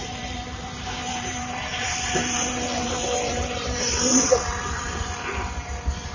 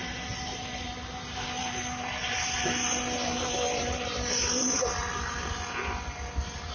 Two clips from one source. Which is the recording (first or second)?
second